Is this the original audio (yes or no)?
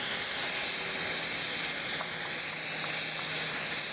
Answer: yes